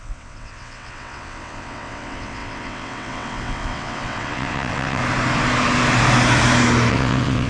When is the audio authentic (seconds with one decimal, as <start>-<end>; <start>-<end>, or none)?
5.0-6.9